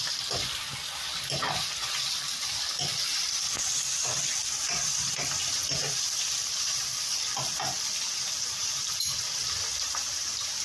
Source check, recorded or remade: remade